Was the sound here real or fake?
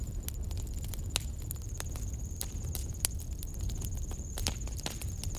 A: real